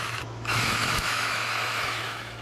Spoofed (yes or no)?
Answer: yes